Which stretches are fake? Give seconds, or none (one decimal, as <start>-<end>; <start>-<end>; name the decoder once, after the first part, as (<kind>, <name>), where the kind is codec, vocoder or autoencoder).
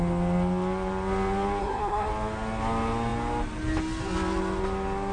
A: 1.6-2.1 (codec, SNAC)